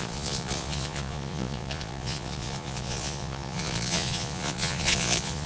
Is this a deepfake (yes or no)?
yes